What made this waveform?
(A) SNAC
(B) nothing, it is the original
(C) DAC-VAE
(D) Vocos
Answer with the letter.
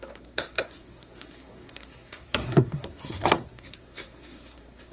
A